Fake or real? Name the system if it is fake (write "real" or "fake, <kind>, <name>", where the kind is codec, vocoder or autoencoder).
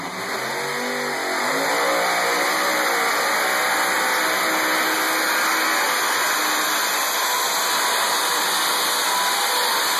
real